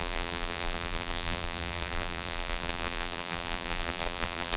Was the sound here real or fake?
fake